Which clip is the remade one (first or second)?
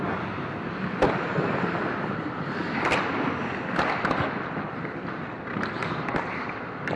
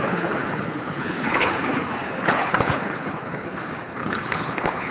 second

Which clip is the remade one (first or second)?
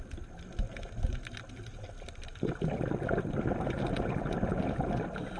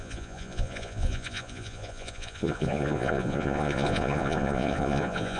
second